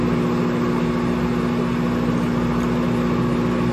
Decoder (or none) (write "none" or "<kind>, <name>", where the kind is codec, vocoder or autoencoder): none